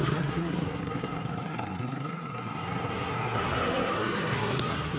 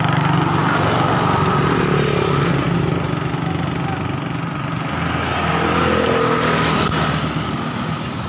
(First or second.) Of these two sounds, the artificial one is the first